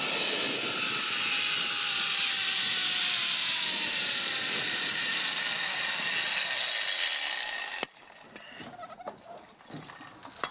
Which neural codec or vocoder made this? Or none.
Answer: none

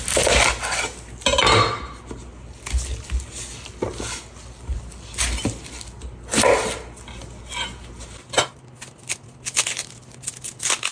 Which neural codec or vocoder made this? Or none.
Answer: none